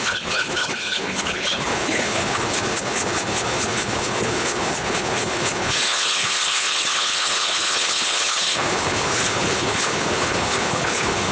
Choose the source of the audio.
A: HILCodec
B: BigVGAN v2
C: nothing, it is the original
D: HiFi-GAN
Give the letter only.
A